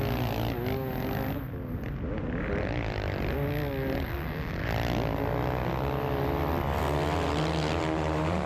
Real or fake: real